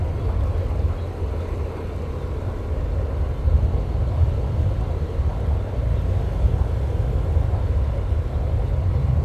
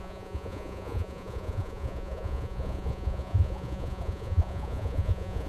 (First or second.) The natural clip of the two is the first